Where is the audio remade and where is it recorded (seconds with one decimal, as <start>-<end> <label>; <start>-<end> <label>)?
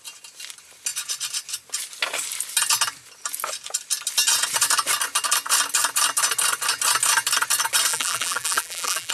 0.0-7.9 recorded; 7.9-9.1 remade